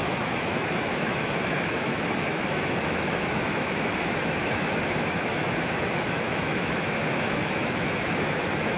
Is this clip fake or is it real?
fake